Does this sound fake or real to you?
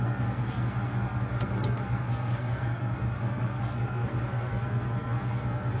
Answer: fake